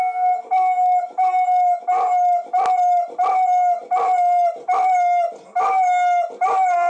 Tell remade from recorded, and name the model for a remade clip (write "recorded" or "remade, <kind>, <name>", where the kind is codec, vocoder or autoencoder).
recorded